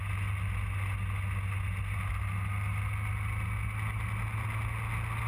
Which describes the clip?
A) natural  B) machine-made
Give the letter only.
A